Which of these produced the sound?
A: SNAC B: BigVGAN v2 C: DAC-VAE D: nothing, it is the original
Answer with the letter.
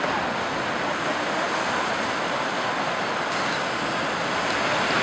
D